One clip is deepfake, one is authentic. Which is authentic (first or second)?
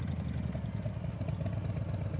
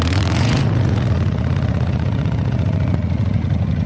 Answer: first